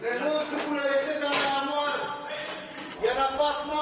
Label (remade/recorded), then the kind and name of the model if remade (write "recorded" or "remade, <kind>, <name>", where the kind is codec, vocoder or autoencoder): recorded